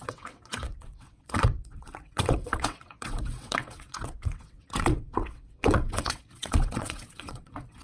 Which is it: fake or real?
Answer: fake